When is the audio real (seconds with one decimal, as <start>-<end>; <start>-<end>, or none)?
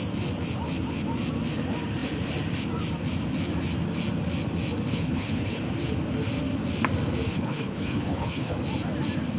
0.0-4.9; 5.6-7.3; 8.5-9.4